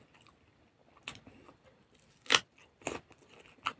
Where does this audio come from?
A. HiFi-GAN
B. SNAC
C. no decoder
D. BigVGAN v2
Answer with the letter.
C